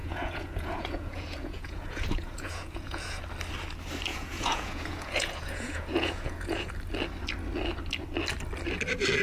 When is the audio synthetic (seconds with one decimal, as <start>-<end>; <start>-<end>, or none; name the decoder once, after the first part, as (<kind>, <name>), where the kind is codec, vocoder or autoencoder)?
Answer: 0.0-3.2 (vocoder, Vocos); 4.1-6.7